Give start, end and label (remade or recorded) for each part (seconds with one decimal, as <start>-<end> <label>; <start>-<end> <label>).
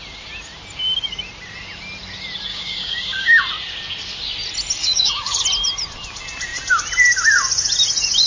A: 0.0-2.5 recorded; 2.5-3.4 remade; 3.4-4.8 recorded; 4.8-5.4 remade; 5.4-8.3 recorded